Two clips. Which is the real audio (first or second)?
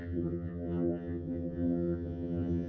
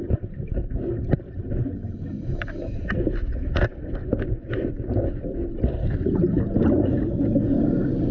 second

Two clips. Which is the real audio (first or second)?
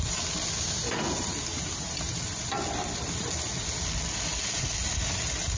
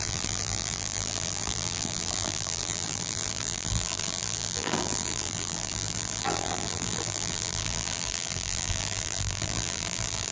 first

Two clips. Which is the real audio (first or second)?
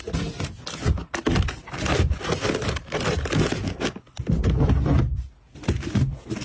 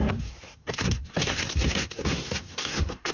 first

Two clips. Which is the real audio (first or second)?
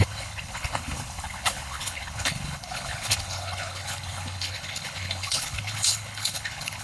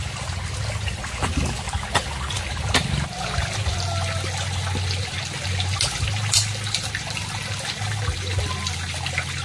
second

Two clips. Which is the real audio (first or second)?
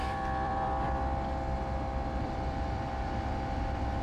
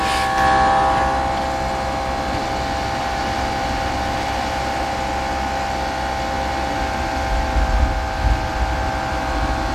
second